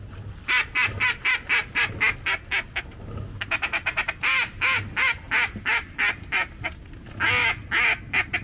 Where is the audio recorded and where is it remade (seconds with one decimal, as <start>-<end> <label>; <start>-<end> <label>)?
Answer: 0.0-8.4 recorded